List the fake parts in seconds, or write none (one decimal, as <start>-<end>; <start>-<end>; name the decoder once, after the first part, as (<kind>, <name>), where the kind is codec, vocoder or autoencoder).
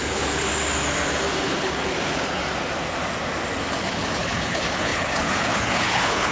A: 0.0-0.5 (codec, HILCodec); 1.4-2.4; 3.8-6.3